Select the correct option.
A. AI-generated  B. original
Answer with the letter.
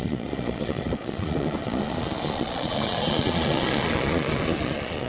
A